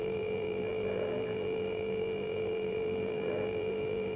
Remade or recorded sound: remade